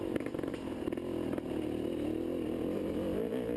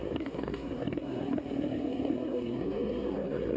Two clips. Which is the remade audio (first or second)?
second